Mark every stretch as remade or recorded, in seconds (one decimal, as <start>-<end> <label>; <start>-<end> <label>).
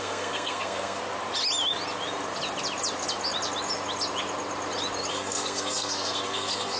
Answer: 0.0-1.0 remade; 1.0-5.1 recorded; 5.1-6.8 remade